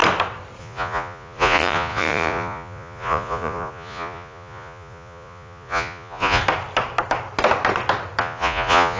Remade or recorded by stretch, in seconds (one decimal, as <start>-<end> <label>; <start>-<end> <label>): 0.0-0.6 recorded; 0.6-6.4 remade; 6.4-8.2 recorded; 8.2-9.0 remade